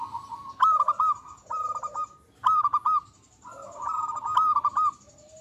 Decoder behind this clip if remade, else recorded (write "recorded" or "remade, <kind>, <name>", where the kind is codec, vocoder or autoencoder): recorded